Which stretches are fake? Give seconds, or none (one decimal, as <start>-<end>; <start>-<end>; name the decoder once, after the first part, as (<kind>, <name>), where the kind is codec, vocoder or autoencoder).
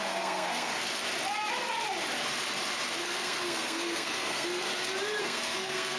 0.0-0.7 (codec, SNAC); 3.0-4.7; 5.2-6.0